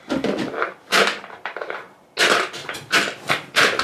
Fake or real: real